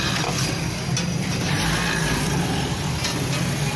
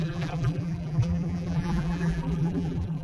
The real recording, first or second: first